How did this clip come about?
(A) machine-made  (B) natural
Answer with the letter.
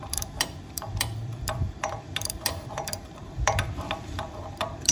A